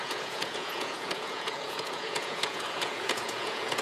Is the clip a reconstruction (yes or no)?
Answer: yes